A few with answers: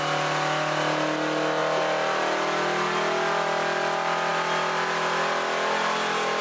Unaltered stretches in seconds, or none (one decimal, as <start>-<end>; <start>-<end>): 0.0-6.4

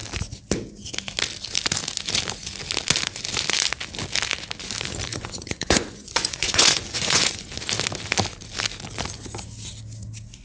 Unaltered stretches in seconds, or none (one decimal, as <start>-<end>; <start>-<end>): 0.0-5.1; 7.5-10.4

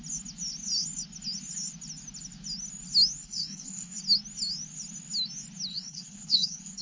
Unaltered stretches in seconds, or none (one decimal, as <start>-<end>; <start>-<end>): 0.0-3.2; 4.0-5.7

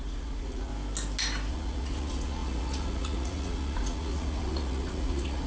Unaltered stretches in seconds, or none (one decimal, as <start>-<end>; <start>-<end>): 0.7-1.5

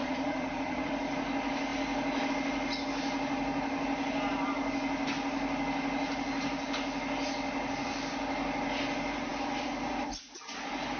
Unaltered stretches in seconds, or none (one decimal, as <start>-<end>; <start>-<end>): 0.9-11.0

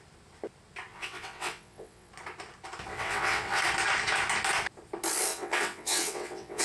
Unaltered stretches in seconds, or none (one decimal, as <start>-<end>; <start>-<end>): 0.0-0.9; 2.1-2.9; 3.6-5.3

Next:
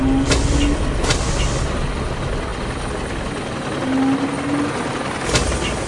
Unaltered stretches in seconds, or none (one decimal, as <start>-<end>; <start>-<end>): 0.0-5.9